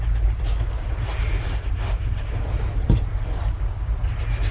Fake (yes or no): no